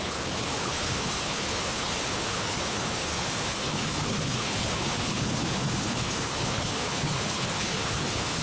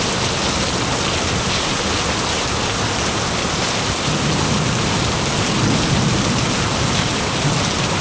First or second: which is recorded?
second